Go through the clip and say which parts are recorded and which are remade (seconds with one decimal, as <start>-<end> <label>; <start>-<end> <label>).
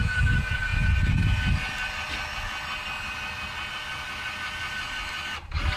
0.0-5.8 recorded